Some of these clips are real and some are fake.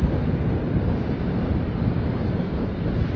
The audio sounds real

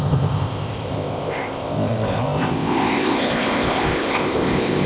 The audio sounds fake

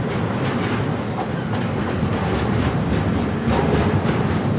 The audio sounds real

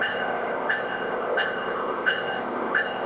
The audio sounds fake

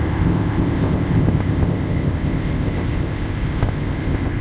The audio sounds fake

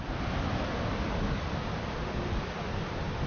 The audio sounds real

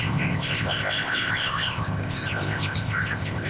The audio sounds fake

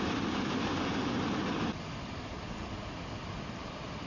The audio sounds real